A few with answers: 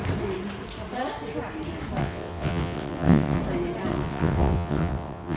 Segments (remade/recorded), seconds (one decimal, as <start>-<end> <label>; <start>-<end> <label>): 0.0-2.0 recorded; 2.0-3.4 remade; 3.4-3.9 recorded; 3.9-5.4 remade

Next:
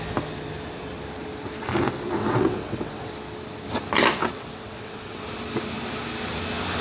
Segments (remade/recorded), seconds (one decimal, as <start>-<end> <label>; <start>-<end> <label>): 0.0-2.2 recorded; 2.2-3.1 remade; 3.1-4.2 recorded; 4.2-5.2 remade; 5.2-6.8 recorded

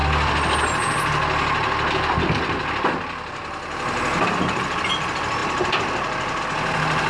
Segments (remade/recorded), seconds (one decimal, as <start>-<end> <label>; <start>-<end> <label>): 0.0-7.1 recorded

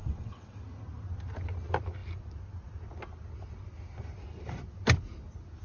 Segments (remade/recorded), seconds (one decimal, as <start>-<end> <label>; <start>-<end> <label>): 0.0-0.6 remade; 0.6-5.6 recorded

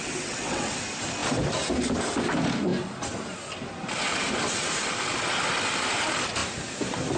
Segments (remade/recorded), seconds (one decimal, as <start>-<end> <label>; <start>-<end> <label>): 0.0-0.7 remade; 0.7-7.2 recorded

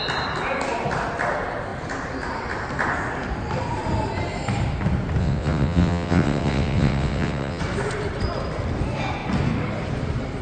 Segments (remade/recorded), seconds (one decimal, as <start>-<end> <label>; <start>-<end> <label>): 0.0-5.2 recorded; 5.2-7.6 remade; 7.6-10.4 recorded